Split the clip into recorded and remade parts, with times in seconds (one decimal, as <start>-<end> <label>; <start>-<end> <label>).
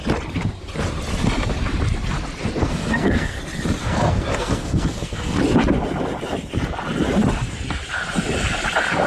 0.0-2.6 recorded; 2.6-3.4 remade; 3.4-3.8 recorded; 3.8-5.4 remade; 5.4-9.1 recorded